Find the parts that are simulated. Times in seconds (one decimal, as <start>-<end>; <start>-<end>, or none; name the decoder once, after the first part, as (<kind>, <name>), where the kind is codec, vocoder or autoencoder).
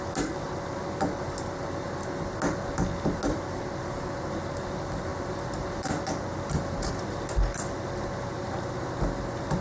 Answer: none